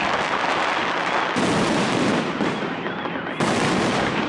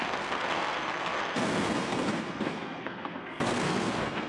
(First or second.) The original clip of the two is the first